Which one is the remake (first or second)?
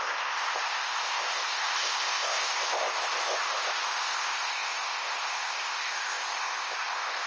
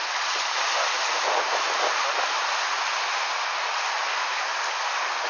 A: first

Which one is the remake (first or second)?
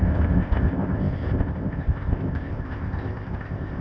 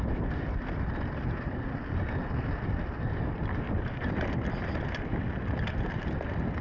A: first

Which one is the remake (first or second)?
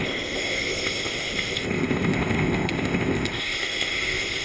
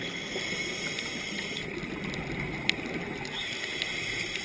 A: first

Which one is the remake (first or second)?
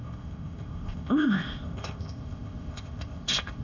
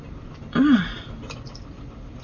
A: first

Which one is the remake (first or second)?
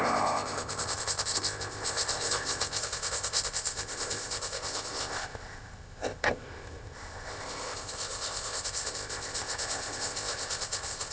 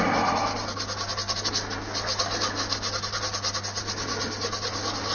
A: first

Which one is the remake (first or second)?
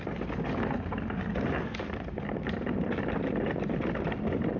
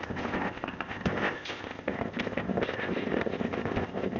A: second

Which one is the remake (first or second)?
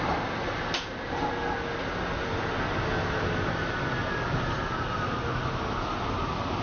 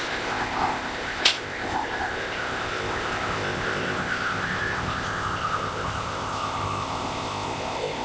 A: second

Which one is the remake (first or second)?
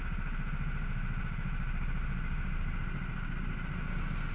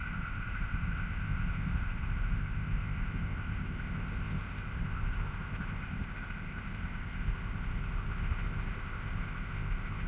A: second